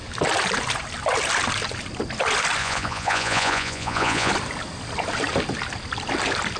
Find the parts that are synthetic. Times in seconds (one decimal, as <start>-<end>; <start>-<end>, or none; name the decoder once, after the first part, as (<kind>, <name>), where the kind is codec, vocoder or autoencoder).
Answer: 2.6-4.3 (vocoder, Vocos)